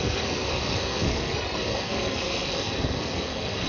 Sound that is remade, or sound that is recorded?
remade